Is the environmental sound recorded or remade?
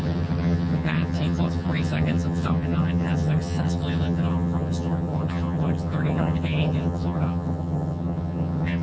remade